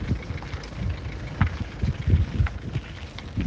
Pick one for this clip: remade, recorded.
recorded